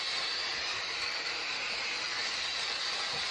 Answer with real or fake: fake